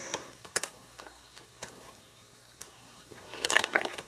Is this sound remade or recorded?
remade